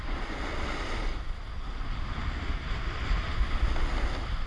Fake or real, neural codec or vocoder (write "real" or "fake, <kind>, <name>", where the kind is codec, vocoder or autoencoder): real